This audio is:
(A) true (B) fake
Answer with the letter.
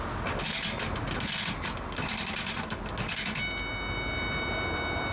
A